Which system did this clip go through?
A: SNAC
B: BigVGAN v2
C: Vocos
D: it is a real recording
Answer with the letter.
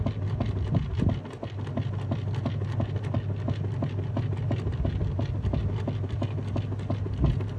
D